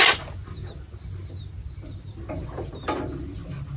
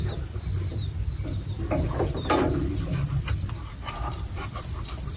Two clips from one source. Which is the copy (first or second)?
second